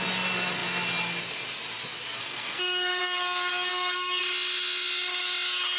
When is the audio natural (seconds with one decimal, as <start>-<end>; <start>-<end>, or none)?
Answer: 0.0-2.2; 3.0-3.7; 4.2-5.8